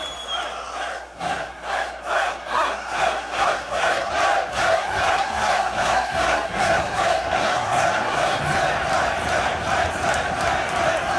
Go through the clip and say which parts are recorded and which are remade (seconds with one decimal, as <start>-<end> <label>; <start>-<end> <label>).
0.0-0.9 recorded; 0.9-4.1 remade; 4.1-4.5 recorded; 4.5-8.4 remade; 8.4-11.2 recorded